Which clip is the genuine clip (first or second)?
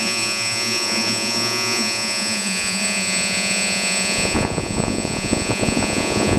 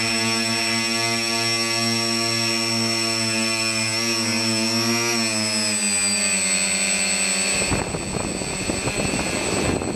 second